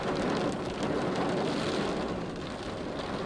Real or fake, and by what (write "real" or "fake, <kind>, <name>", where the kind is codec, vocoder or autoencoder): real